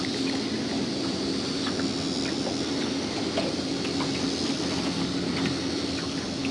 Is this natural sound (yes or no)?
yes